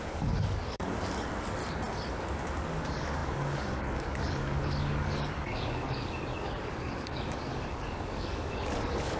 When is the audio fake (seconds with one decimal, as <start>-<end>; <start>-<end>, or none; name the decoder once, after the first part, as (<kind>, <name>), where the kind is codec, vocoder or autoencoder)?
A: 0.0-1.6 (codec, DAC); 2.1-9.2